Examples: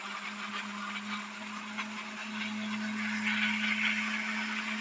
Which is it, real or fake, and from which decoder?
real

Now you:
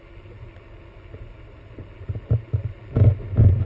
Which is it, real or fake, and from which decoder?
real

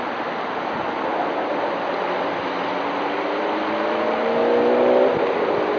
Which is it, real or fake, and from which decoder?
real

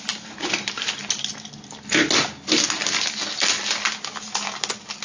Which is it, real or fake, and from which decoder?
real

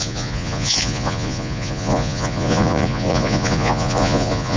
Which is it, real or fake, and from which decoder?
fake, vocoder, Vocos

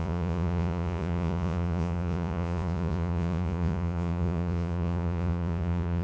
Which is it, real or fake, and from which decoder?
fake, vocoder, Vocos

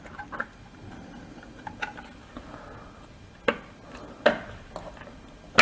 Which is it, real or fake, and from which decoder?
real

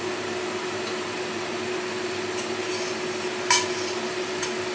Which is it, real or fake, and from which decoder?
real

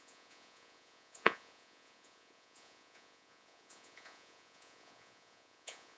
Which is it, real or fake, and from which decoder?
fake, vocoder, Vocos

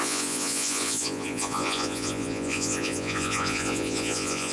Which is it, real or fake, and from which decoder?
fake, vocoder, Vocos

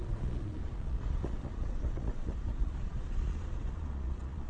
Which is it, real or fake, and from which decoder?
fake, vocoder, Vocos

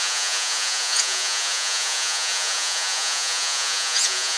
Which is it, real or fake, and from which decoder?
fake, vocoder, Vocos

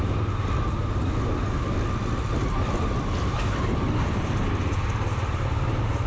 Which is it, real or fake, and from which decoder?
real